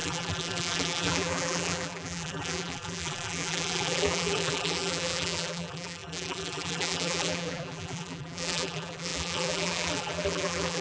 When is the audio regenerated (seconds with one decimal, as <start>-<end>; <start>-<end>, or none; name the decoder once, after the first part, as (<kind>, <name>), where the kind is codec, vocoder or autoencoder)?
0.0-10.8 (vocoder, BigVGAN v2)

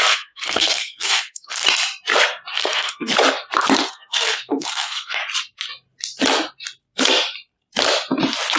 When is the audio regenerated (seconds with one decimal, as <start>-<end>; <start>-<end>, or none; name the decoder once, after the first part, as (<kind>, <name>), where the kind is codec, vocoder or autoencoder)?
0.0-1.6 (codec, SNAC); 2.5-3.1; 3.9-5.2

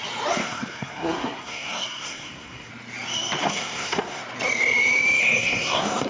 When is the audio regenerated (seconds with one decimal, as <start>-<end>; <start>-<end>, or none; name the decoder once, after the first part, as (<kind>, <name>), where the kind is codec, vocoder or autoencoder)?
0.4-2.7 (codec, SNAC); 3.4-4.2; 5.2-6.1

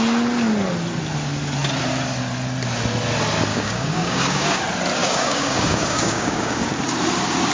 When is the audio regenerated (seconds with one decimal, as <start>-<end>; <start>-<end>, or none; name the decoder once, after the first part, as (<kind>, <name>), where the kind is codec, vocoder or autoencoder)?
3.5-4.6 (codec, DAC); 5.0-6.7

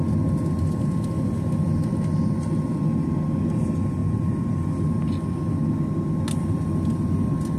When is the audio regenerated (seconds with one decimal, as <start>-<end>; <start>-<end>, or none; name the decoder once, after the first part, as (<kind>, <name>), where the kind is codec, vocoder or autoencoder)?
4.0-4.7 (vocoder, BigVGAN v2)

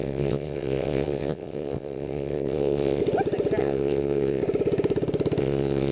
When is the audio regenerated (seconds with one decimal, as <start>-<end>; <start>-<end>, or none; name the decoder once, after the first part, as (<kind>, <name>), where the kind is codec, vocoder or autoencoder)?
0.0-3.0 (vocoder, WaveNeXt); 3.6-4.4; 5.4-5.9

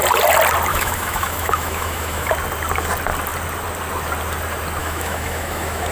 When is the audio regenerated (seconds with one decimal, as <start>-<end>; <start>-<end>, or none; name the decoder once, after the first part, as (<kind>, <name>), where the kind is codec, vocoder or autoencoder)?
0.7-2.3 (autoencoder, DAC-VAE); 4.8-5.9